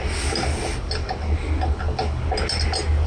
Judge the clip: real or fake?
real